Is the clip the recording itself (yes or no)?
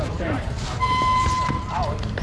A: no